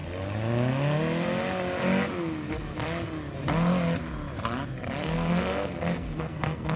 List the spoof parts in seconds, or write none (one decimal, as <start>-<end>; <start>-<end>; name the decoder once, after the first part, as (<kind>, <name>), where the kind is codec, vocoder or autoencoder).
5.0-6.8 (codec, SNAC)